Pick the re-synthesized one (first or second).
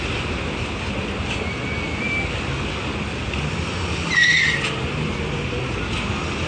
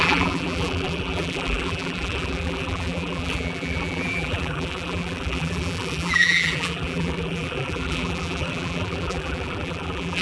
second